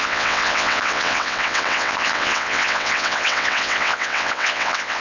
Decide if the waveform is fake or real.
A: fake